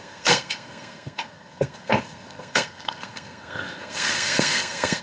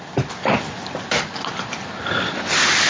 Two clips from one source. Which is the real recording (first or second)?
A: second